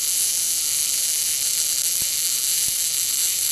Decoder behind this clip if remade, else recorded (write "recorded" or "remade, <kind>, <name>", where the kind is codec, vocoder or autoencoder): remade, vocoder, BigVGAN v2